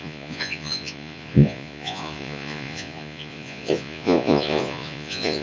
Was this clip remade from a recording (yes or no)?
yes